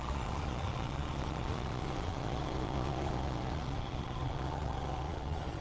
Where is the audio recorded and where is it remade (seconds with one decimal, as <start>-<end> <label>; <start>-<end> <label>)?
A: 0.0-5.6 remade